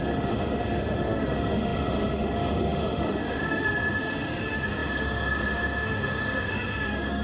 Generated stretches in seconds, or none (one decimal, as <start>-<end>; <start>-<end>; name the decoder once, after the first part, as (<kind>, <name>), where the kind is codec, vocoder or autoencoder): 0.0-7.2 (autoencoder, DAC-VAE)